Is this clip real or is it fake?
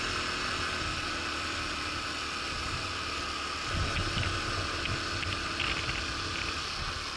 real